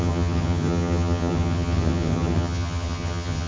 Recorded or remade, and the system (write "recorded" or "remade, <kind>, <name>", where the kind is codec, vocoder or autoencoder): remade, vocoder, HiFi-GAN